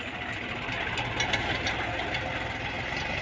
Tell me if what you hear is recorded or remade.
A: recorded